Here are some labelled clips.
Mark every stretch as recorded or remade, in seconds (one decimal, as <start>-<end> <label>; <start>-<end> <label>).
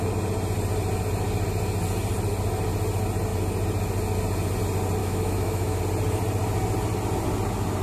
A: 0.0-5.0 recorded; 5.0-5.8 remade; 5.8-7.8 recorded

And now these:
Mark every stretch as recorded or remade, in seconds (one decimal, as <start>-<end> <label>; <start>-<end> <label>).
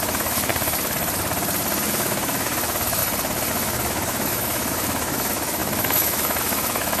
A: 0.0-0.5 remade; 0.5-1.9 recorded; 1.9-3.0 remade; 3.0-3.5 recorded; 3.5-7.0 remade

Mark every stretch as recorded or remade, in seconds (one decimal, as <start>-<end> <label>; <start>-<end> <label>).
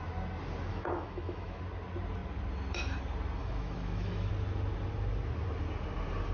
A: 0.0-0.7 recorded; 0.7-1.6 remade; 1.6-3.4 recorded; 3.4-4.3 remade; 4.3-6.3 recorded